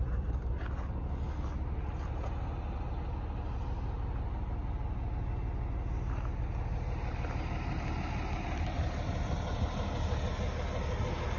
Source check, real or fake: real